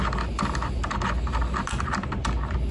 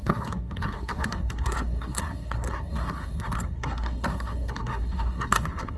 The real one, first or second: first